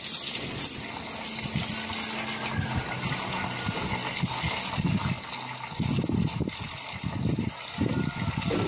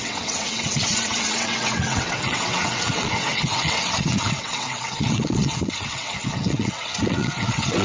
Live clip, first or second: first